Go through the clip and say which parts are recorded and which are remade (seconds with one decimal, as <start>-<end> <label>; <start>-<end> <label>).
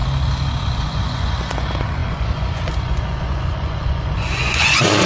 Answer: 0.0-0.7 recorded; 0.7-5.1 remade